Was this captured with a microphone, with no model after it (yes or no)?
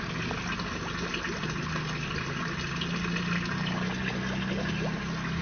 yes